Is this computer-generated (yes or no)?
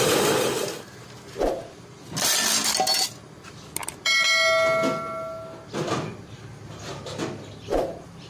no